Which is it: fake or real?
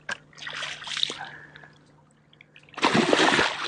real